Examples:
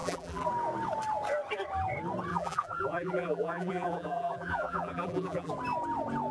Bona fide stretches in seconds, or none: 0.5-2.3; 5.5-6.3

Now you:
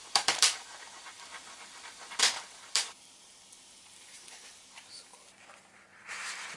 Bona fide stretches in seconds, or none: 1.3-2.2; 5.1-6.6

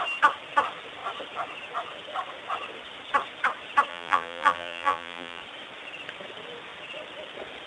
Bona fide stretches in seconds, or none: 0.0-3.9; 5.4-7.7

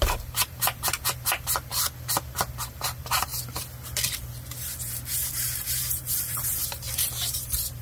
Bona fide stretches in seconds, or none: 1.7-2.7; 3.3-5.3

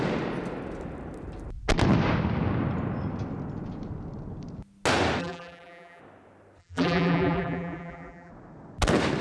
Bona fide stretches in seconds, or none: 0.0-5.2; 6.0-6.6; 8.3-9.2

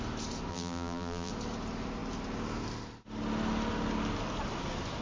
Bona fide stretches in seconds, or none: 0.0-0.5; 1.3-5.0

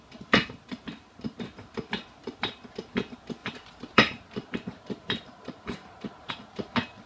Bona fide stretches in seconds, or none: 0.0-3.4; 6.3-7.1

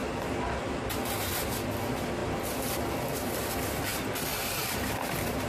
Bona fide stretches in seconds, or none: 0.0-1.3; 2.2-3.0; 3.9-4.7